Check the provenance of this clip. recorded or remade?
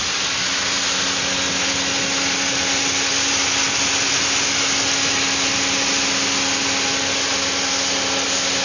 recorded